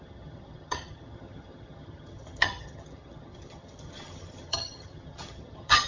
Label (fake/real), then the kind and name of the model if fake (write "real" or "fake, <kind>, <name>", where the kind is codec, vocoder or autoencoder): fake, vocoder, HiFi-GAN